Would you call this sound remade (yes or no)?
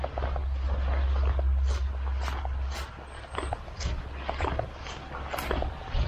no